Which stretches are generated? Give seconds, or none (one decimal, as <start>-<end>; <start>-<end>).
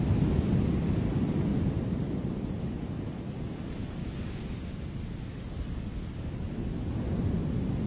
1.5-3.4; 4.0-7.1